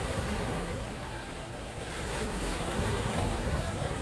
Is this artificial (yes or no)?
yes